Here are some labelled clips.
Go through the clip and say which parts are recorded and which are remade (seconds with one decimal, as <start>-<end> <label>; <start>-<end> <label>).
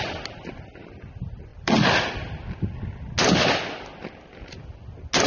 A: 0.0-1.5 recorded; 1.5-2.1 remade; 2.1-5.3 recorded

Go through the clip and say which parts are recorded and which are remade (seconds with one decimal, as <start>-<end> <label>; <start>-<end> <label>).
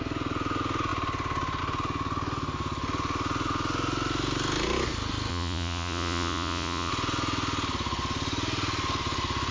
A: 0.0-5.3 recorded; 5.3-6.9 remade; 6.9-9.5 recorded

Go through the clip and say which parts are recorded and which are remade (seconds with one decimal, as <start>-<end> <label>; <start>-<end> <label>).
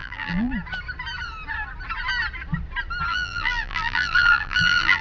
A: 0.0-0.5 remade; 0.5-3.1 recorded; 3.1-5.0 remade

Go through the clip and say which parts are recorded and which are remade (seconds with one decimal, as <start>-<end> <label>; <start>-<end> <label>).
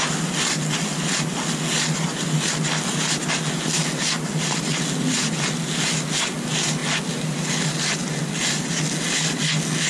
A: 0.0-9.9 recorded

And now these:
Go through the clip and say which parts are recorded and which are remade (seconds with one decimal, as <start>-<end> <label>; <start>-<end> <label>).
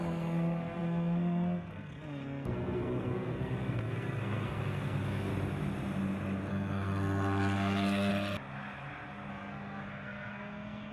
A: 0.0-5.3 remade; 5.3-6.5 recorded; 6.5-8.1 remade; 8.1-9.3 recorded; 9.3-10.9 remade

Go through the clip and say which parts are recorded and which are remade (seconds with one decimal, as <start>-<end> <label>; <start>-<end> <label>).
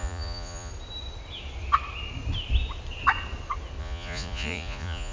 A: 0.0-0.7 remade; 0.7-3.8 recorded; 3.8-5.1 remade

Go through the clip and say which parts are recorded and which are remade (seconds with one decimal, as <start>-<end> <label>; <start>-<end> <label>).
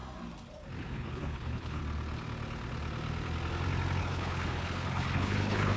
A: 0.0-0.8 recorded; 0.8-1.8 remade; 1.8-4.0 recorded; 4.0-5.8 remade